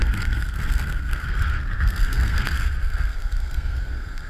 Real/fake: fake